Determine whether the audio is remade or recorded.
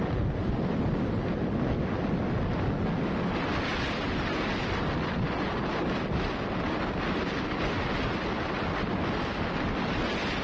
recorded